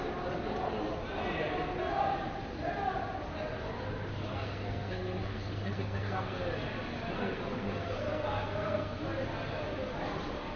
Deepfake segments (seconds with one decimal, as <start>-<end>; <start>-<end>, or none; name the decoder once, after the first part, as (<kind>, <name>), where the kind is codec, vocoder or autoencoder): 4.3-6.4 (codec, SNAC); 7.1-9.0